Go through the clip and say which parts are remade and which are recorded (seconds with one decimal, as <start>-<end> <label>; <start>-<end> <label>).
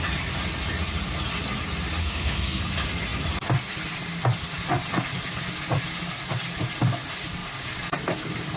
0.0-2.0 recorded; 2.0-2.6 remade; 2.6-8.6 recorded